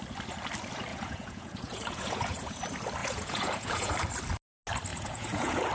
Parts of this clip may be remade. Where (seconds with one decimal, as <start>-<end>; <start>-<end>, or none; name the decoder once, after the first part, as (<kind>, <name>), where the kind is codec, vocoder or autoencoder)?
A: 0.9-2.6 (vocoder, Vocos); 3.0-3.9; 4.9-5.7